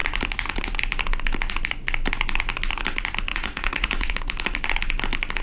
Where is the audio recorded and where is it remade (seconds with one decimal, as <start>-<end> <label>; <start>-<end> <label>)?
0.0-3.3 recorded; 3.3-4.2 remade; 4.2-5.4 recorded

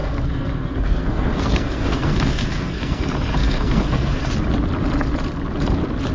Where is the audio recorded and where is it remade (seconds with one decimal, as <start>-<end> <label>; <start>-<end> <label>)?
0.0-3.0 remade; 3.0-3.4 recorded; 3.4-4.2 remade; 4.2-6.1 recorded

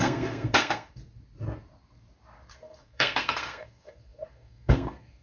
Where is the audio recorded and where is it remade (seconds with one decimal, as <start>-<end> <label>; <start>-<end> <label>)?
0.0-1.0 remade; 1.0-2.5 recorded; 2.5-5.2 remade

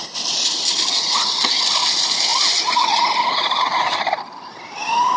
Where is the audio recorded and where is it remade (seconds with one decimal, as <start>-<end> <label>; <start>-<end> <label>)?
0.0-5.2 recorded

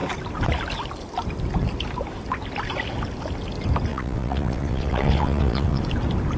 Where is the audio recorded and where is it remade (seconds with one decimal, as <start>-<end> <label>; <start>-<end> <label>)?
0.0-3.9 recorded; 3.9-5.8 remade; 5.8-6.4 recorded

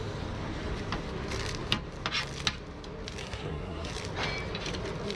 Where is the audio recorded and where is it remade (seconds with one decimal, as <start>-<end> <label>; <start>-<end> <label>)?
0.0-3.2 recorded; 3.2-3.9 remade; 3.9-5.2 recorded

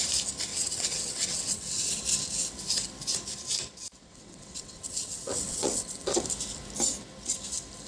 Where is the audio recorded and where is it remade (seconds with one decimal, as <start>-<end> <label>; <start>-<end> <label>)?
0.0-0.5 recorded; 0.5-2.0 remade; 2.0-4.0 recorded; 4.0-6.2 remade; 6.2-7.9 recorded

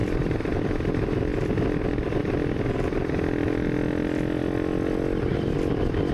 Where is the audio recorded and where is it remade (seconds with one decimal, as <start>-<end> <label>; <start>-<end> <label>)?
0.0-0.5 remade; 0.5-6.1 recorded